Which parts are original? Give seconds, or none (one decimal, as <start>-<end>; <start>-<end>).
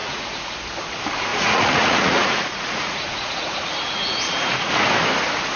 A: 0.5-1.3; 4.7-5.6